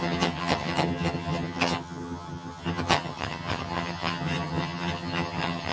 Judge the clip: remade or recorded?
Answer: remade